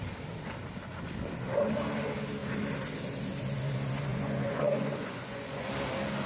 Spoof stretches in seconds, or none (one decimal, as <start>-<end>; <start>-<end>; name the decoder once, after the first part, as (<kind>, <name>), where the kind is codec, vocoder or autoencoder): 4.1-5.7 (vocoder, Vocos)